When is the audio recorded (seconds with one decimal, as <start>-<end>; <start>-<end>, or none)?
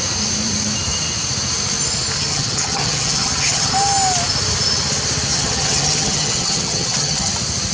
0.0-2.3; 3.7-5.3; 7.3-7.7